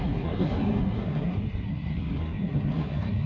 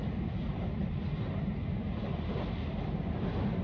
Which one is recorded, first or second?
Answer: second